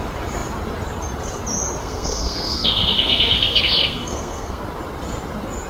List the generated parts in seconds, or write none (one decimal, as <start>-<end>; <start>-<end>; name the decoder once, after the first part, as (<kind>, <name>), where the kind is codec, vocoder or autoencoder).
1.8-4.6 (codec, SNAC)